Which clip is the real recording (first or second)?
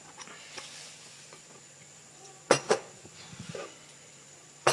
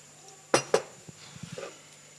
second